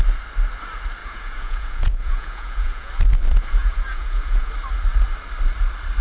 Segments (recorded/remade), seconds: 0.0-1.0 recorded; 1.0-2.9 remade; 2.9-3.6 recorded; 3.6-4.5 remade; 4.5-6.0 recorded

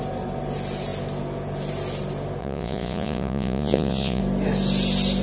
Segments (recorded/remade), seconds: 0.0-2.4 recorded; 2.4-4.2 remade; 4.2-5.2 recorded

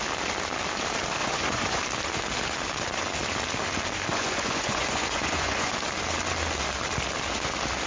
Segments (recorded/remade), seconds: 0.0-1.2 recorded; 1.2-1.8 remade; 1.8-4.1 recorded; 4.1-5.7 remade; 5.7-7.9 recorded

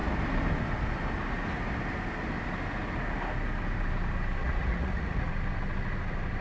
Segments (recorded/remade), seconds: 0.0-4.4 recorded; 4.4-5.3 remade; 5.3-6.4 recorded